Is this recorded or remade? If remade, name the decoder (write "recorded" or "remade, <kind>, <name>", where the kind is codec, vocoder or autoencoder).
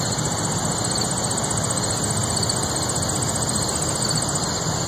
recorded